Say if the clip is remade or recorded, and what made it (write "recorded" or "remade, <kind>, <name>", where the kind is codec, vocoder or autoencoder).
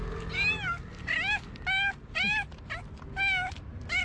recorded